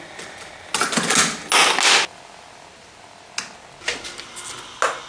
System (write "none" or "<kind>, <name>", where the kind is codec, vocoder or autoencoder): none